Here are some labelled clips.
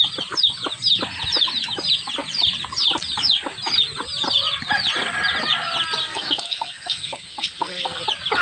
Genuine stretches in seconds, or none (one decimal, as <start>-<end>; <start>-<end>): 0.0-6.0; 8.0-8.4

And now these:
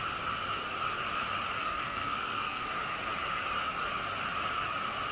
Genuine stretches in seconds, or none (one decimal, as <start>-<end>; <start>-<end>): 0.0-1.6; 2.7-5.1

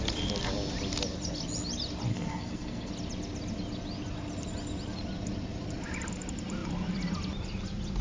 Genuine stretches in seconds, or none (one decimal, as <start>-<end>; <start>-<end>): 0.0-2.1; 2.9-8.0

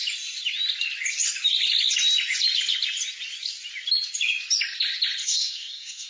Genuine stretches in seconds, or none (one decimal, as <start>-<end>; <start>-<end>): 0.0-5.2

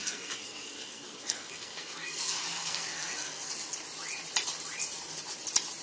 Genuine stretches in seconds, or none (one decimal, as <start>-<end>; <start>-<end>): 3.5-5.8

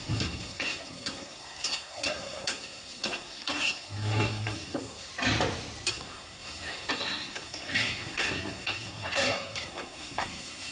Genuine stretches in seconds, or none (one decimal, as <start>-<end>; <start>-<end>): 5.1-5.9

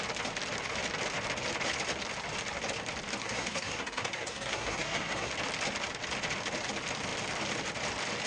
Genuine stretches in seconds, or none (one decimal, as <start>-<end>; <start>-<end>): 0.0-3.2; 5.3-8.3